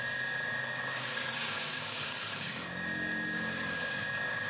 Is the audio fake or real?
fake